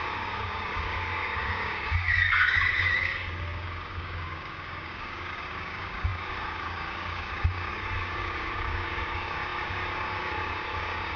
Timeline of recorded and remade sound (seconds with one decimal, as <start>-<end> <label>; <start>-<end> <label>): 0.0-11.2 remade